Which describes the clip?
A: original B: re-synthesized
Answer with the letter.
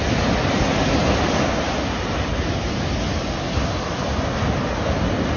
A